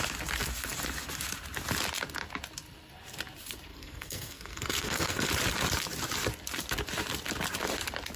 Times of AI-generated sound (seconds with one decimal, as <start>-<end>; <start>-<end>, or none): 3.7-5.3